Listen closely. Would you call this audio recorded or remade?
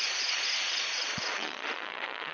remade